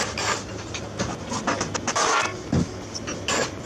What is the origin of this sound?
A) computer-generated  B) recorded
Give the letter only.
B